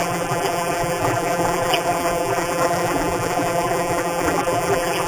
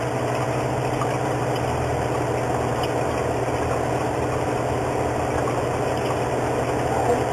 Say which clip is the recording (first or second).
second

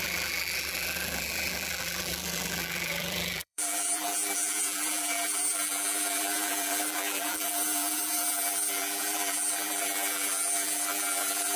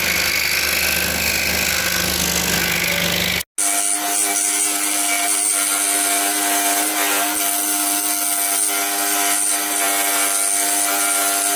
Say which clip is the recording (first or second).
second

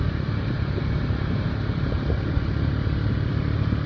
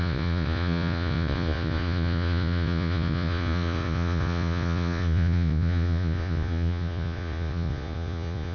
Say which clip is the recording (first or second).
first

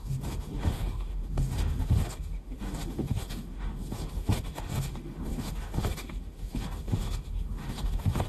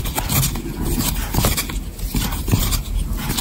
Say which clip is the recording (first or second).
second